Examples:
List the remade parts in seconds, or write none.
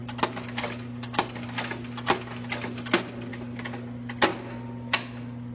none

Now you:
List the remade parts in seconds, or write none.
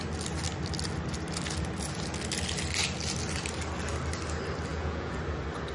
4.7-5.2 (vocoder, Vocos)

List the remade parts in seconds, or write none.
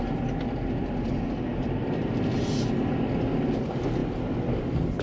none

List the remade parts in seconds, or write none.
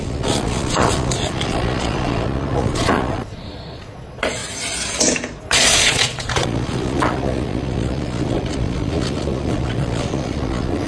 0.0-4.4 (vocoder, Vocos); 5.4-10.9